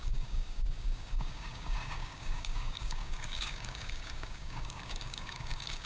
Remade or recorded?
remade